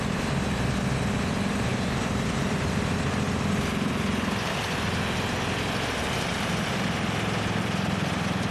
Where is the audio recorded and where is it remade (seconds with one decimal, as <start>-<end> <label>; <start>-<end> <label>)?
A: 0.0-1.7 recorded; 1.7-2.7 remade; 2.7-8.5 recorded